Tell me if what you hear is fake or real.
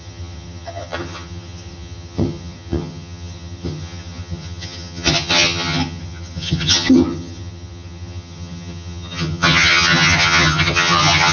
fake